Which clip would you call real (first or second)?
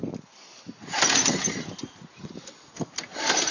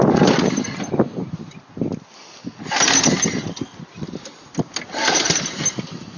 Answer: second